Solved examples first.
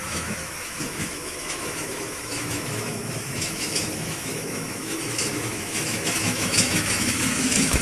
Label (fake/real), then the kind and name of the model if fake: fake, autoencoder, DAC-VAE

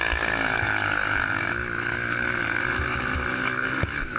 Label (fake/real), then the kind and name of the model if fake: fake, autoencoder, DAC-VAE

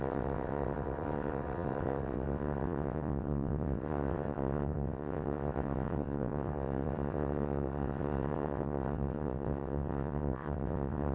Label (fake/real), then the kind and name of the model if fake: fake, vocoder, WaveNeXt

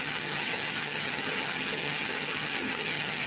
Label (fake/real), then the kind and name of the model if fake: fake, vocoder, HiFi-GAN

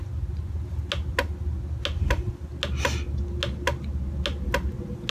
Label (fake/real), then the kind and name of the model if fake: real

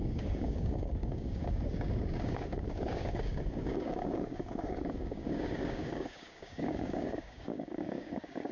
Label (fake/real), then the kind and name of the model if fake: fake, codec, DAC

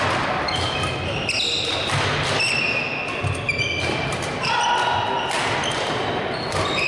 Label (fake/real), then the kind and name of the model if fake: real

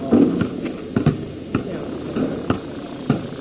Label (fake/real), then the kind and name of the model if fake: real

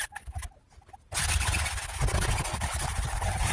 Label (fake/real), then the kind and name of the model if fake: real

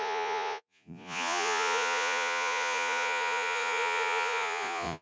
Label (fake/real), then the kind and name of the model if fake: fake, vocoder, Vocos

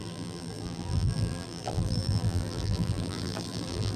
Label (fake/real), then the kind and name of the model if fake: fake, vocoder, BigVGAN v2